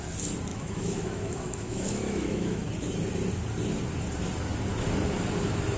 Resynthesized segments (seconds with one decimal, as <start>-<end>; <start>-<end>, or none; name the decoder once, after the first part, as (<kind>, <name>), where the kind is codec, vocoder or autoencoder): 0.5-2.6 (autoencoder, DAC-VAE)